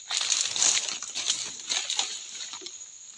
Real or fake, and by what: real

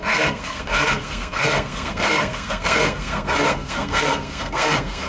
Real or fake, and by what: fake, codec, SNAC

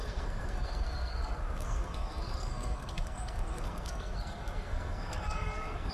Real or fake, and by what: fake, codec, SNAC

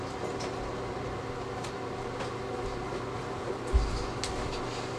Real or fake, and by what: real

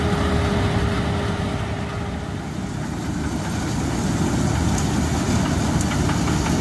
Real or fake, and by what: real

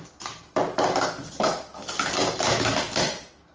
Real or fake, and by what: real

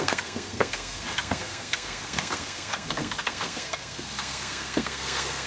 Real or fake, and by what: fake, codec, SNAC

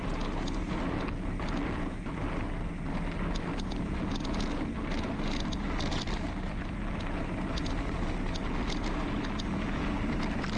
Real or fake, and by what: real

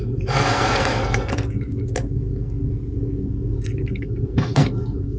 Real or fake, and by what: fake, codec, SNAC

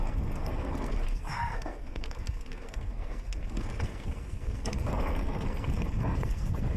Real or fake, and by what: fake, codec, SNAC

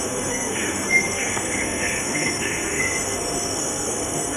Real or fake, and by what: fake, codec, SNAC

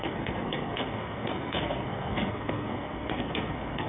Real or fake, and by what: fake, codec, SNAC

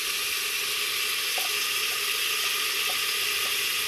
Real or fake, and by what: real